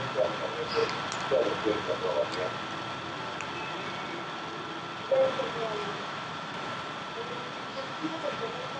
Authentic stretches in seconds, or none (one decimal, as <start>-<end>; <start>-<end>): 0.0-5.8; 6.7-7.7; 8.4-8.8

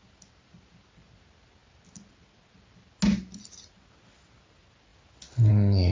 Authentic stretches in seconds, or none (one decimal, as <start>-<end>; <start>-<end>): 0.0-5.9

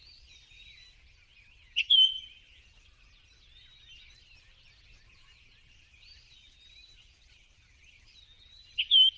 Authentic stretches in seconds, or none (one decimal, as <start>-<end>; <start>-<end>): 0.0-9.2